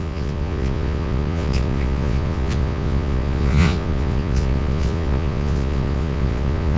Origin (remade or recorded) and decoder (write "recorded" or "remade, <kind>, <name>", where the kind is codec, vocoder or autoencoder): remade, vocoder, Vocos